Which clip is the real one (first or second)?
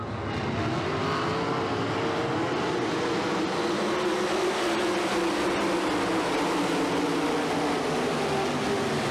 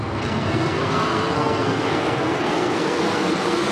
first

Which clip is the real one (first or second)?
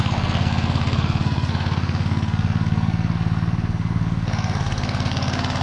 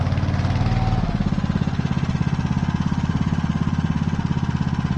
second